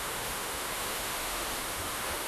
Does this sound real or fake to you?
fake